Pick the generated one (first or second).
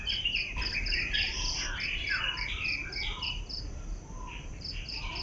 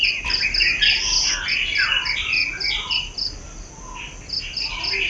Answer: first